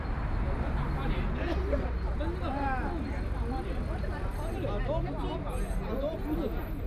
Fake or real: real